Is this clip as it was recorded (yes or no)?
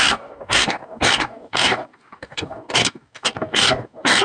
no